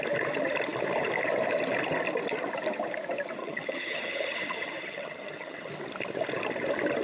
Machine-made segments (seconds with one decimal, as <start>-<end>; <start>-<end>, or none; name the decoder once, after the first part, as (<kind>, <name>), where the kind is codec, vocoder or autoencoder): 3.4-5.7 (vocoder, HiFi-GAN)